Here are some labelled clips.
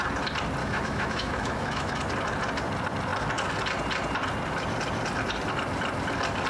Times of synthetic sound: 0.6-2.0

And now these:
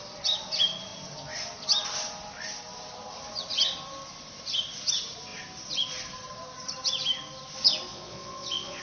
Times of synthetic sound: 7.9-8.8